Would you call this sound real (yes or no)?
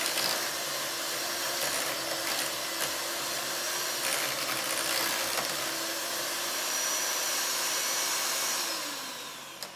yes